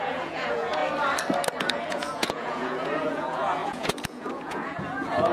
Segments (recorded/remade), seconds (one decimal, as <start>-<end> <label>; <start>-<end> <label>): 0.0-0.8 remade; 0.8-1.6 recorded; 1.6-5.3 remade